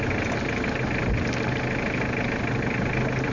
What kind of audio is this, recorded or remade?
recorded